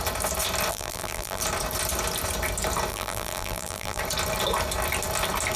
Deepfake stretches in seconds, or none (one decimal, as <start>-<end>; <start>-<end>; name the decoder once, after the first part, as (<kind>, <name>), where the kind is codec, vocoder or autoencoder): 0.7-1.4 (vocoder, BigVGAN v2); 2.9-4.0